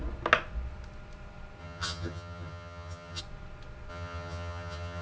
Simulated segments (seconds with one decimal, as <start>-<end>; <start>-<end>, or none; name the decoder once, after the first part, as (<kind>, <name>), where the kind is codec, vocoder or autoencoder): 1.6-3.2 (vocoder, HiFi-GAN); 3.9-5.0